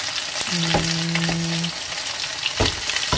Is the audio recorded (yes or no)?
yes